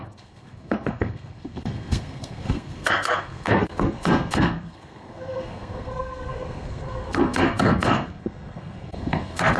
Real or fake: fake